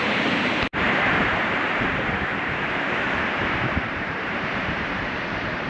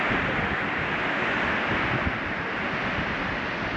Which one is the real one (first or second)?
second